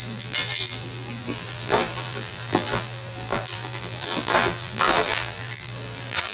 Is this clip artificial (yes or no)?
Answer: yes